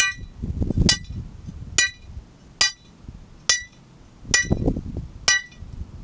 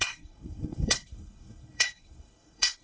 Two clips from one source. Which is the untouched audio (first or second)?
first